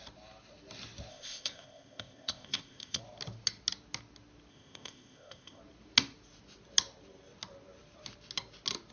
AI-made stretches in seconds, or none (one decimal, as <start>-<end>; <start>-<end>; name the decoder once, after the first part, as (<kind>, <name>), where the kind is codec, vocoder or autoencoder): 1.1-3.0 (codec, ZipCodec); 4.5-5.6